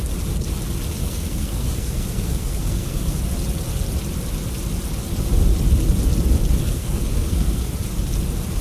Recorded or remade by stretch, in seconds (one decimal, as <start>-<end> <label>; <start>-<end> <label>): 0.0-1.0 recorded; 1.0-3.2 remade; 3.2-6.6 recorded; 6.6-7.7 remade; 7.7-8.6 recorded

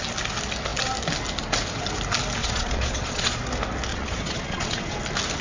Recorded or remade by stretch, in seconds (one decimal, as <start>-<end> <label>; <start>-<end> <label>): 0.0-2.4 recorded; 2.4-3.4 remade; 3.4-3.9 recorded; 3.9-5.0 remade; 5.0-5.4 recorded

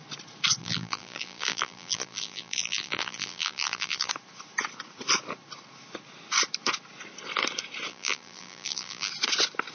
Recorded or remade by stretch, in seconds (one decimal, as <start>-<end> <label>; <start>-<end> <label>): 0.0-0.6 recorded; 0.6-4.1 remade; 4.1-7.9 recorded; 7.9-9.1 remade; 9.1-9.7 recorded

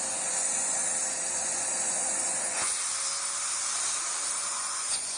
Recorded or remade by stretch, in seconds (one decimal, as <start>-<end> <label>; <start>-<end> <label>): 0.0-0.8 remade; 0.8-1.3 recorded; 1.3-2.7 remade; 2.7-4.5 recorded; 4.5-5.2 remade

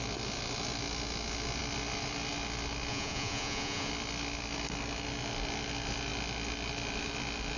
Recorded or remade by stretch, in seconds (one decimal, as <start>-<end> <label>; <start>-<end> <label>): 0.0-2.9 recorded; 2.9-3.9 remade; 3.9-7.6 recorded